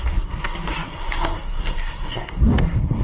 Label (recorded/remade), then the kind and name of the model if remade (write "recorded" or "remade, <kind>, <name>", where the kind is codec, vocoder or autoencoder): remade, codec, SNAC